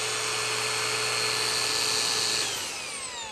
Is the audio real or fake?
real